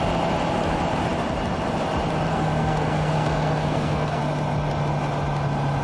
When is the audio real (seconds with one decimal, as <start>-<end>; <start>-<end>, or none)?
0.0-2.3; 4.2-5.8